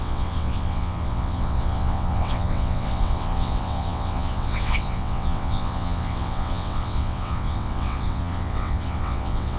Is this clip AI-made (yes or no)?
yes